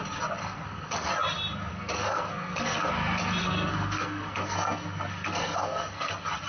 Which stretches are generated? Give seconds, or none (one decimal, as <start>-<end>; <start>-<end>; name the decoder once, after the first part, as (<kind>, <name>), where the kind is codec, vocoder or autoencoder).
0.4-1.1 (codec, SNAC); 1.7-2.9; 3.4-6.1